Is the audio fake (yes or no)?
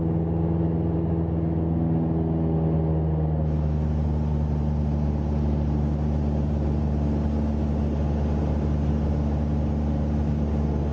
no